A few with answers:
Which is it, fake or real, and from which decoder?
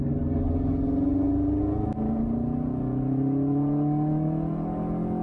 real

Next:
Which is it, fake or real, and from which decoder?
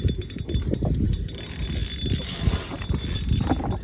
real